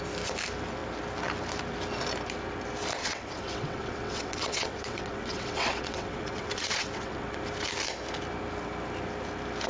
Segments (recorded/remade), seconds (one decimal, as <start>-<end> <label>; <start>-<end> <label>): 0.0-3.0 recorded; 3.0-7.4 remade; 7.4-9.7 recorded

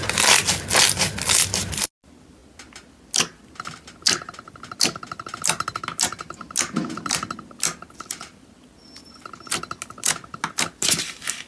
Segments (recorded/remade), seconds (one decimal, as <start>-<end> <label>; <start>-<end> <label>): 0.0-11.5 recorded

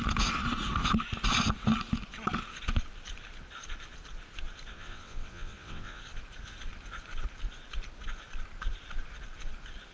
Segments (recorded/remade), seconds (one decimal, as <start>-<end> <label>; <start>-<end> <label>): 0.0-4.7 recorded; 4.7-6.0 remade; 6.0-9.9 recorded